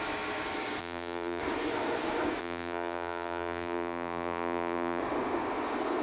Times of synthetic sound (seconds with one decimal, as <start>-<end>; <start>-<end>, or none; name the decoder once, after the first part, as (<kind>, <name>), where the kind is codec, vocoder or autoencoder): 0.8-1.4 (vocoder, BigVGAN v2); 2.4-5.0